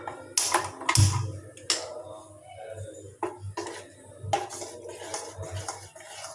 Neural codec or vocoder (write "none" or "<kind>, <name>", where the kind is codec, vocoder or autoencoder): none